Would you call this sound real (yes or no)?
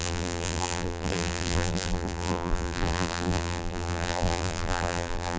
no